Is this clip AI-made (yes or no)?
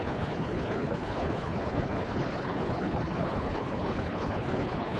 yes